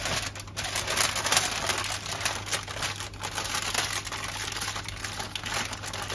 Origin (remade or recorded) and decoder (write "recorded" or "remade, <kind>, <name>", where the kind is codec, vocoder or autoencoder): recorded